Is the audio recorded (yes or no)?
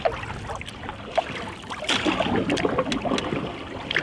yes